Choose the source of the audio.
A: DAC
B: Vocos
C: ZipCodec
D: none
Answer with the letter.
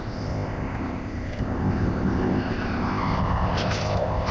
C